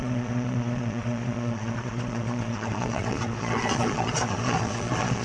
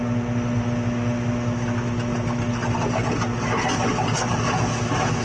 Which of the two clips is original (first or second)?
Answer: second